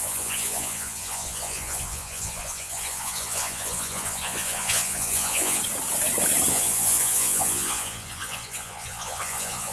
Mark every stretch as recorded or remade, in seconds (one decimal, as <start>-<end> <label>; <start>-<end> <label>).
0.0-5.6 remade; 5.6-6.5 recorded; 6.5-9.7 remade